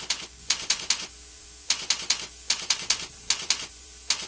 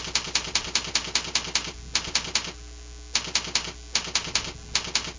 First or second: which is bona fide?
second